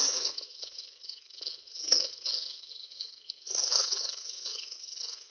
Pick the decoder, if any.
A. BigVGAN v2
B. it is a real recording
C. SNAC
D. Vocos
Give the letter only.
C